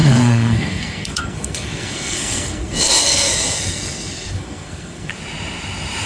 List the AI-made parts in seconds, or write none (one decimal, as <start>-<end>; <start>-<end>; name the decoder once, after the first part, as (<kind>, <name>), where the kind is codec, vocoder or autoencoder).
0.0-5.1 (codec, SNAC)